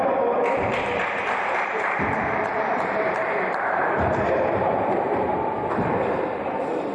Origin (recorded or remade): remade